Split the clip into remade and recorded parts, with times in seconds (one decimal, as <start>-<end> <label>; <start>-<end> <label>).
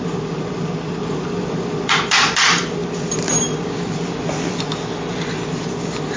0.0-6.2 recorded